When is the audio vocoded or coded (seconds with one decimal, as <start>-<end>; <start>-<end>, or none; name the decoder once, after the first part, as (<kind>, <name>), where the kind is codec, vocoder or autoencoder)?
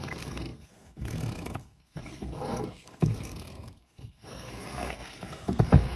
0.0-6.0 (codec, SNAC)